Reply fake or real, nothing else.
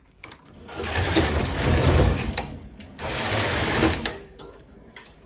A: fake